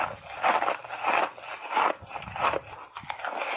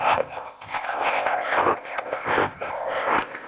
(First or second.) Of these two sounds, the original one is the first